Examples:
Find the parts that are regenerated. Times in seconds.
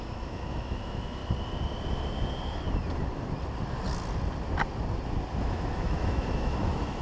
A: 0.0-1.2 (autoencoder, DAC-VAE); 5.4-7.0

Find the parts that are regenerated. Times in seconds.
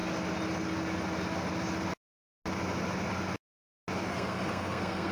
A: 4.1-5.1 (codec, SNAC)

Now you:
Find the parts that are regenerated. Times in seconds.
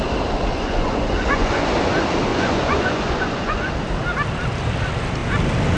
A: 0.5-1.8 (vocoder, Vocos); 2.3-3.7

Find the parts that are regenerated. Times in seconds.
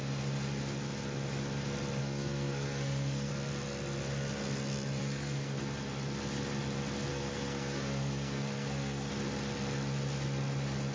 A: 2.0-3.3 (codec, SNAC); 5.0-5.6; 7.1-9.1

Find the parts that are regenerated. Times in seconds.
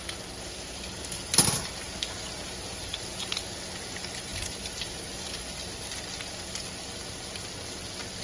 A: 2.7-3.2 (vocoder, BigVGAN v2); 4.3-6.0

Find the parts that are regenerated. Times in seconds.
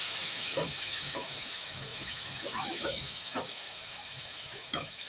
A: 0.0-5.1 (autoencoder, DAC-VAE)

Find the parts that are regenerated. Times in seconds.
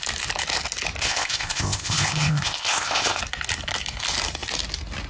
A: 1.0-3.2 (codec, ZipCodec)